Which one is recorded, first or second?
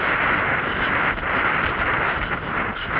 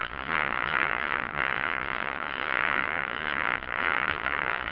first